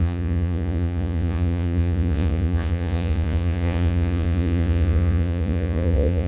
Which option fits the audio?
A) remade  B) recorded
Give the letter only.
A